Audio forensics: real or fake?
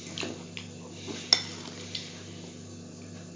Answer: real